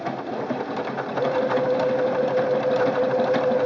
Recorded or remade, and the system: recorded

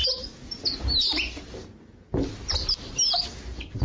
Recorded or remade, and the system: recorded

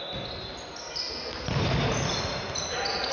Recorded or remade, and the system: recorded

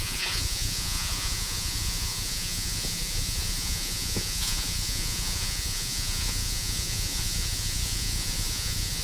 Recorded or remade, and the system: remade, vocoder, Vocos